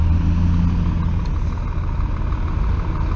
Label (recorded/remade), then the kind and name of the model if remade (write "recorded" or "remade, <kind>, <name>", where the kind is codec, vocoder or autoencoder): recorded